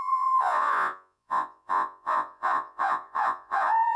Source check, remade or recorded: remade